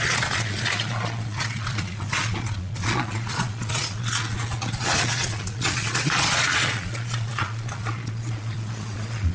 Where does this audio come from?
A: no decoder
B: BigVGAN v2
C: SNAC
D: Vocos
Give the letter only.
D